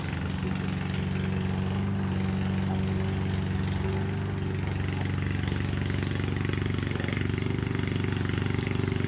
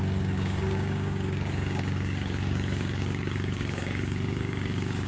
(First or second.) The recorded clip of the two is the first